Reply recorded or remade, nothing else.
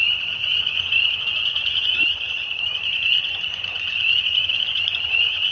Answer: remade